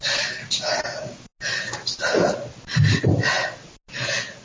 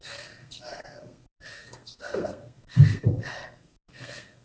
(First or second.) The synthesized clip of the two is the second